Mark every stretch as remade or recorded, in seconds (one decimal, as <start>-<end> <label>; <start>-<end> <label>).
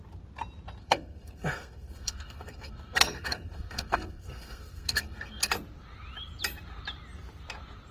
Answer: 0.0-0.8 recorded; 0.8-5.5 remade; 5.5-7.9 recorded